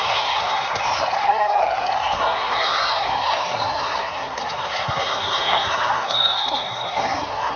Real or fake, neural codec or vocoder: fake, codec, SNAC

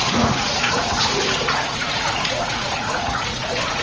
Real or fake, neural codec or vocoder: fake, vocoder, Vocos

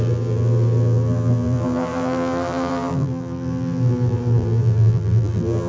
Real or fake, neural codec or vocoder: fake, vocoder, BigVGAN v2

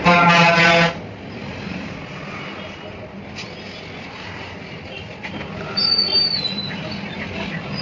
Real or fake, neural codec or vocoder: real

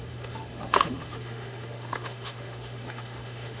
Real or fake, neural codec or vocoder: fake, autoencoder, DAC-VAE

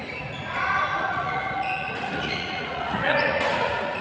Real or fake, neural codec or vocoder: fake, vocoder, Vocos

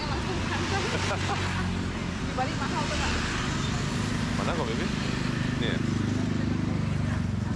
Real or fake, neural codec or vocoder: real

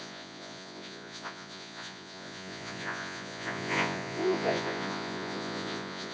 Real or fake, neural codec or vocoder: fake, vocoder, Vocos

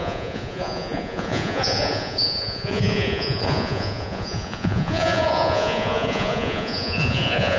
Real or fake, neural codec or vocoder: fake, vocoder, Vocos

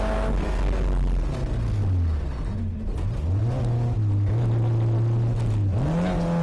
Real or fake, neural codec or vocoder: real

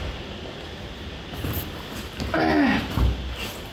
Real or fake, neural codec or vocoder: real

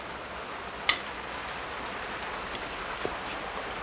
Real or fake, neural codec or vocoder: real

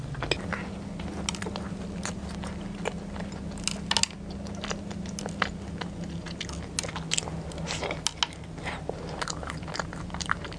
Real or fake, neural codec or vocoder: real